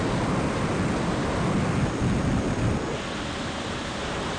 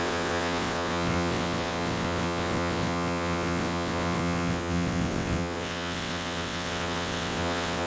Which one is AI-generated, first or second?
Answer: second